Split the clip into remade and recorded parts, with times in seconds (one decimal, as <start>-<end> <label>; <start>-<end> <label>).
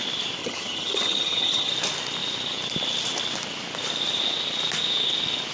0.0-0.4 recorded; 0.4-1.7 remade; 1.7-5.5 recorded